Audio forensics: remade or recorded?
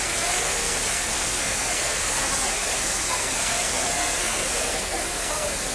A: remade